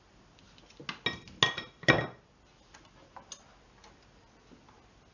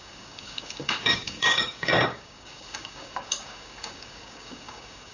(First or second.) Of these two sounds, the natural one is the first